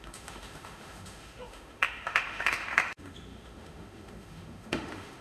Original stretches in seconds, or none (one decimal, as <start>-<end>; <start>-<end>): none